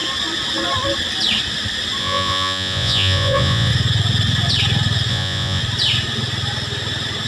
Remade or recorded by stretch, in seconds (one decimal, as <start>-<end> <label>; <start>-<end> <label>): 0.0-2.0 recorded; 2.0-3.7 remade; 3.7-5.1 recorded; 5.1-5.6 remade; 5.6-7.3 recorded